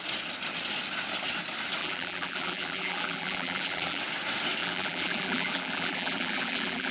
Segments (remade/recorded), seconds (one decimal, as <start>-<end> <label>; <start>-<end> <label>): 0.0-1.8 recorded; 1.8-4.0 remade; 4.0-4.6 recorded; 4.6-6.9 remade